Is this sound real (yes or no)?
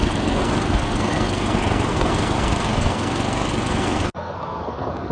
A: no